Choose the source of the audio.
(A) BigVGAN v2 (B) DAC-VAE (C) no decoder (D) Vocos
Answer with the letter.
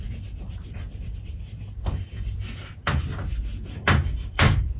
A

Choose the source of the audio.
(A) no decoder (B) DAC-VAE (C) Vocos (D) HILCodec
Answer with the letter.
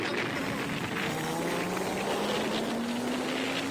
A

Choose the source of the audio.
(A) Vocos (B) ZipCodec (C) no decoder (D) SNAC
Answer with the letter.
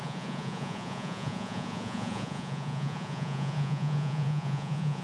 A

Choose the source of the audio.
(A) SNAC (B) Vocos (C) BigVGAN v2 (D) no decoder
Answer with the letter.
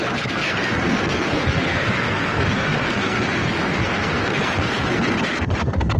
A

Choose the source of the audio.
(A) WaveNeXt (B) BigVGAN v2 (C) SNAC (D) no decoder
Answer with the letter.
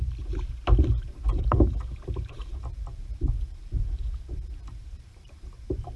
B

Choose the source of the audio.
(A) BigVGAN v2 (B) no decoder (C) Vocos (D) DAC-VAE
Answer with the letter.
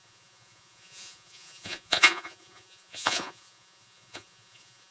C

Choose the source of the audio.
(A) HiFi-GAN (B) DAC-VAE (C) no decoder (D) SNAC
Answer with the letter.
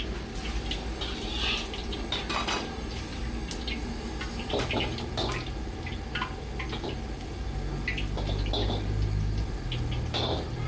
C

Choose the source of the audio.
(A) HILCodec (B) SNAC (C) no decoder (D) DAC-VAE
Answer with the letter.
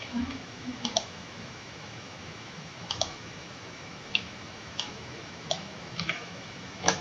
D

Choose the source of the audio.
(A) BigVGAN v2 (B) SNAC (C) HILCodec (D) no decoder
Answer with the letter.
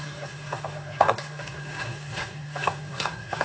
B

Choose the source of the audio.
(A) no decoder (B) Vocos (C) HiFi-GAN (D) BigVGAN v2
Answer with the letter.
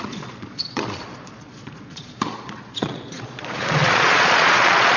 B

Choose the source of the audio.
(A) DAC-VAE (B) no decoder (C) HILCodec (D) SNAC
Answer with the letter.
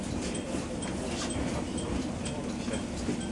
B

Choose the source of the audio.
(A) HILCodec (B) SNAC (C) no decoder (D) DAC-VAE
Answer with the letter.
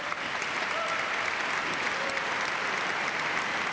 C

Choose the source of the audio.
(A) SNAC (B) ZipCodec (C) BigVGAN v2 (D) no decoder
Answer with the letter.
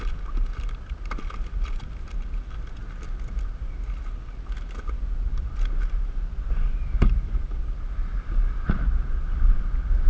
D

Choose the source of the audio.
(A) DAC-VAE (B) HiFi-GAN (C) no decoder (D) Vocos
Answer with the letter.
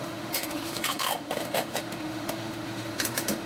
A